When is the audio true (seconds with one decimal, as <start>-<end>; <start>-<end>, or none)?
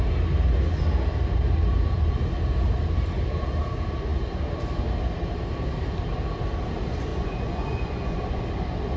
0.0-7.1; 8.4-9.0